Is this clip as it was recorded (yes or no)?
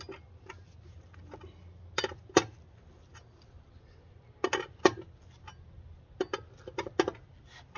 yes